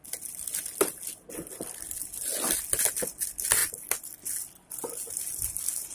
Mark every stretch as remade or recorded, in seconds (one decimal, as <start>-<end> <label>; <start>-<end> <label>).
0.0-5.9 recorded